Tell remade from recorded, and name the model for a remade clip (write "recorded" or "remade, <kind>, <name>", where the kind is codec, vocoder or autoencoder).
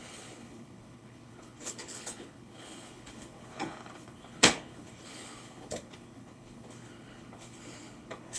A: remade, codec, HILCodec